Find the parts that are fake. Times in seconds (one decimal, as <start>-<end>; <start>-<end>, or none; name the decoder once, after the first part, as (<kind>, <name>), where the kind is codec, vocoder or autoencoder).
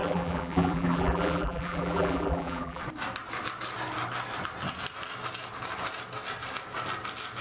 0.0-2.8 (vocoder, BigVGAN v2)